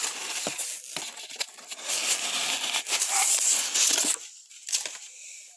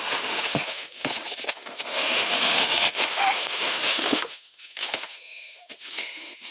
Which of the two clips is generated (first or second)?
second